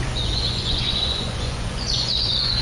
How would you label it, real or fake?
fake